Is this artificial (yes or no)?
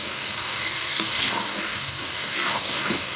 yes